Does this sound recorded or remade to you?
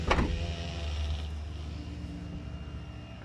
recorded